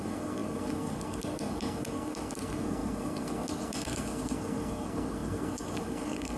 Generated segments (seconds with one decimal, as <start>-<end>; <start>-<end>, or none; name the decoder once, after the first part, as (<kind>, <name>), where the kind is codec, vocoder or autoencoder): 0.0-6.4 (codec, SNAC)